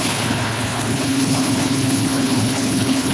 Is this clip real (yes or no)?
no